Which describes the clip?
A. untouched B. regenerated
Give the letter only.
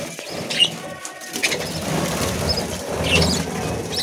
A